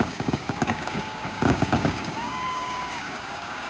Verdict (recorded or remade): remade